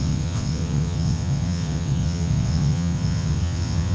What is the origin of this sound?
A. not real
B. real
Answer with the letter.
A